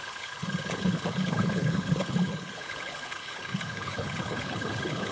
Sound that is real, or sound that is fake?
fake